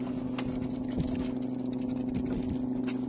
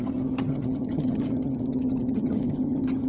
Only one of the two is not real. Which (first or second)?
second